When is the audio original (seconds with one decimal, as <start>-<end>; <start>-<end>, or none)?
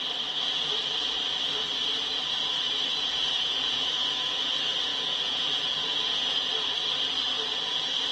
0.0-2.9; 4.3-4.9; 6.5-8.1